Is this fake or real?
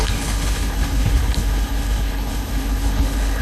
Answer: fake